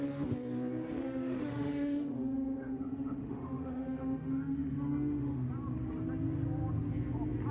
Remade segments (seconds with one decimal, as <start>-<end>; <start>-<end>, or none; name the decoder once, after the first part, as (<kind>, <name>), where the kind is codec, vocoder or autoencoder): 1.0-5.5 (autoencoder, DAC-VAE)